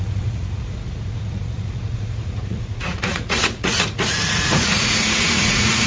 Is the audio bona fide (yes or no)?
no